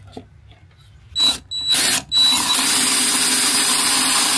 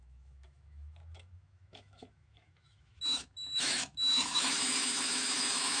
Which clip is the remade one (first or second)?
second